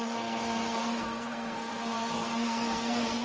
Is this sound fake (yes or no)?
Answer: yes